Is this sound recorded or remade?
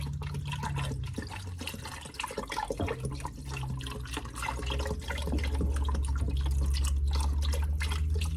recorded